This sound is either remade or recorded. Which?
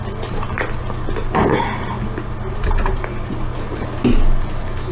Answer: recorded